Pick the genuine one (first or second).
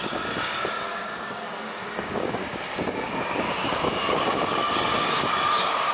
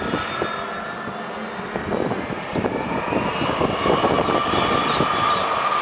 second